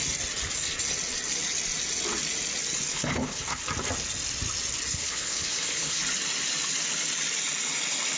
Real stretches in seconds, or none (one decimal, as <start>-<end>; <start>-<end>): 0.0-2.9; 3.6-4.9; 6.0-8.2